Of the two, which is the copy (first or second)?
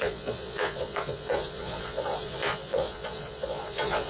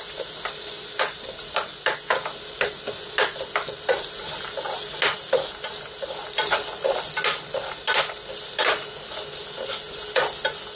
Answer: first